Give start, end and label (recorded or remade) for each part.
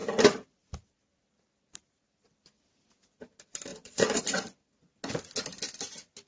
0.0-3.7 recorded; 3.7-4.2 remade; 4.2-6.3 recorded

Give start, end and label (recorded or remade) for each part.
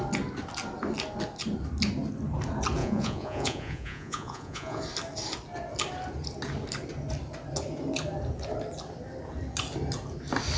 0.0-2.8 recorded; 2.8-4.8 remade; 4.8-10.6 recorded